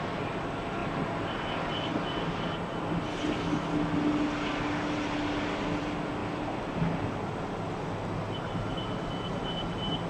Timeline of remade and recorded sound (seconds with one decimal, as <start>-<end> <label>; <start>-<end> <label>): 0.0-10.1 recorded